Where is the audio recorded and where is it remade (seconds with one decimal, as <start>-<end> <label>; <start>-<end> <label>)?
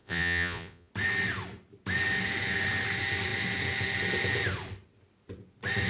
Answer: 0.0-0.9 remade; 0.9-5.9 recorded